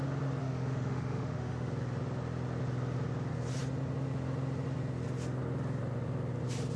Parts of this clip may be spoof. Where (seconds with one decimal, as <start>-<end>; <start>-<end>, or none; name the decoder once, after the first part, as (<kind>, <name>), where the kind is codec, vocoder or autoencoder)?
0.4-1.7 (autoencoder, DAC-VAE)